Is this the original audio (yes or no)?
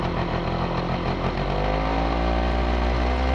yes